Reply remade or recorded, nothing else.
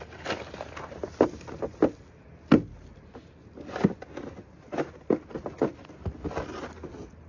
recorded